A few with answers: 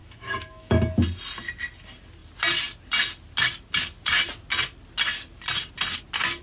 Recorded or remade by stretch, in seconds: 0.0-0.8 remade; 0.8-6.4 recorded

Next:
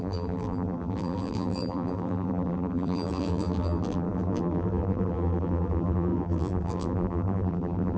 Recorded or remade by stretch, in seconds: 0.0-8.0 remade

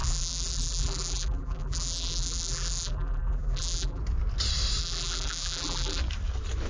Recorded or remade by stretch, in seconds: 0.0-4.0 remade; 4.0-4.8 recorded; 4.8-6.0 remade; 6.0-6.7 recorded

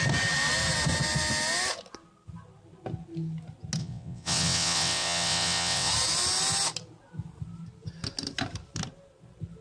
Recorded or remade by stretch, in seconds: 0.0-3.8 recorded; 3.8-5.9 remade; 5.9-9.6 recorded

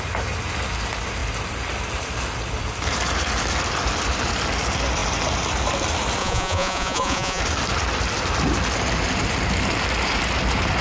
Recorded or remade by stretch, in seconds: 0.0-6.2 recorded; 6.2-7.4 remade; 7.4-10.8 recorded